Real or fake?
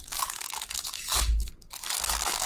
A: fake